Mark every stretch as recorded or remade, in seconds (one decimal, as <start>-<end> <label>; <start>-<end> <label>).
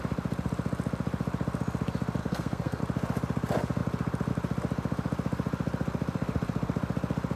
0.0-2.2 recorded; 2.2-2.8 remade; 2.8-7.4 recorded